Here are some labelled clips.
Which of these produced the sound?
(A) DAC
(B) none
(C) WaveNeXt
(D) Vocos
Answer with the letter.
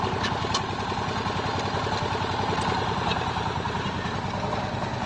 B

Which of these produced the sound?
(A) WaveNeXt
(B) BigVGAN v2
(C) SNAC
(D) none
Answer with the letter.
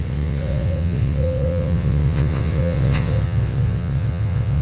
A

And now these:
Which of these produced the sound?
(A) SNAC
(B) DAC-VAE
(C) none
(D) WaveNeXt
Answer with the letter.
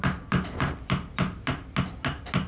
C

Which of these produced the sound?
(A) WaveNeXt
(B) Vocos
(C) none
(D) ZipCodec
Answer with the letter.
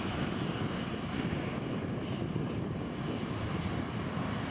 C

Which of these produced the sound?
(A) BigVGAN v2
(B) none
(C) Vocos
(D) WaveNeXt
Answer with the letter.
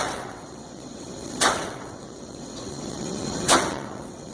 D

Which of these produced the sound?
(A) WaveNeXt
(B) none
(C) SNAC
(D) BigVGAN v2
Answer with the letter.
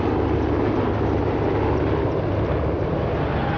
B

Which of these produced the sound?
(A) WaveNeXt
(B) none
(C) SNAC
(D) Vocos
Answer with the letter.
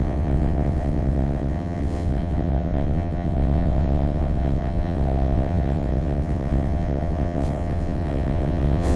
A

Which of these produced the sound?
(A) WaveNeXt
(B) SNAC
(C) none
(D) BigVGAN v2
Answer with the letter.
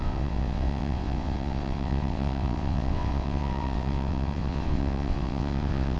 A